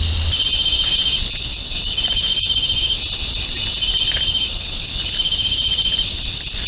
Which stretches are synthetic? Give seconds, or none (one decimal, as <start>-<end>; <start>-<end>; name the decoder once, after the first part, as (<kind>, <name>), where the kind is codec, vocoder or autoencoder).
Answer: none